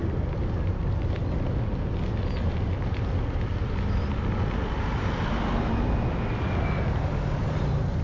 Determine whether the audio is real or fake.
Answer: real